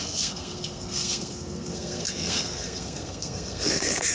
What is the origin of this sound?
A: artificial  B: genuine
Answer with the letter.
A